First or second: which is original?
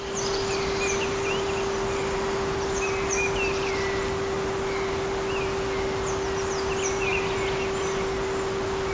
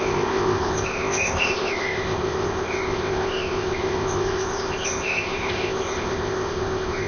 first